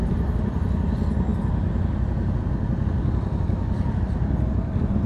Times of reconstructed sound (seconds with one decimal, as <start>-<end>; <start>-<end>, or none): none